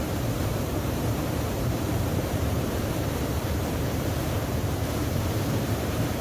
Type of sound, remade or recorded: remade